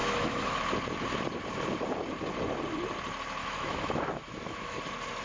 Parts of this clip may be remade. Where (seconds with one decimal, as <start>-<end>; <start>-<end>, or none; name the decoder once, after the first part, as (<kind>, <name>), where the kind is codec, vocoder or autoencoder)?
0.0-0.6 (autoencoder, DAC-VAE); 3.4-4.8